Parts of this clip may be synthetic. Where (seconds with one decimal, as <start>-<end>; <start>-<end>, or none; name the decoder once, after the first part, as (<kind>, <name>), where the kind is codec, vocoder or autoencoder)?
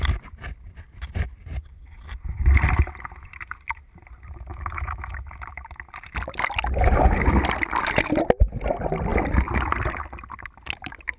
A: 4.5-5.1 (autoencoder, DAC-VAE)